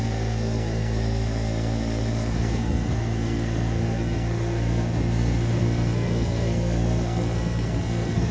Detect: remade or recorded remade